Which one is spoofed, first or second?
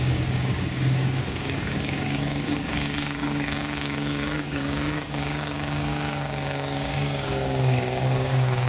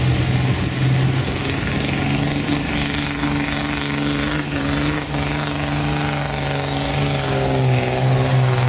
first